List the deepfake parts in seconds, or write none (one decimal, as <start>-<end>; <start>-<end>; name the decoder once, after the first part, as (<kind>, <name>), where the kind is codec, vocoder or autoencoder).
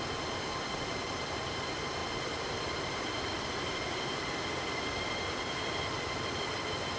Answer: none